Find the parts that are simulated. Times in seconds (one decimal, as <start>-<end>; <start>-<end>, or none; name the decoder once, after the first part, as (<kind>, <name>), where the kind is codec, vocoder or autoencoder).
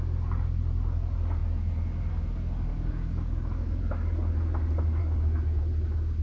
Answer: 2.7-3.8 (codec, DAC); 5.0-5.6